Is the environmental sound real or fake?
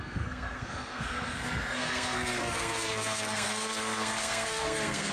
fake